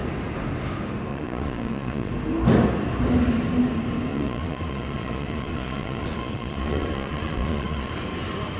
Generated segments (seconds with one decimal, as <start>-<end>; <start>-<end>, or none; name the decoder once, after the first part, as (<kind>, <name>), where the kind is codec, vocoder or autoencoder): 1.1-2.1 (vocoder, Vocos); 4.1-7.9